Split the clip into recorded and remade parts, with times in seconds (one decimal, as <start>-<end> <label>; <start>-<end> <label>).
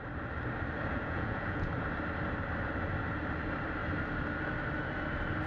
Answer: 0.0-0.9 recorded; 0.9-1.7 remade; 1.7-5.5 recorded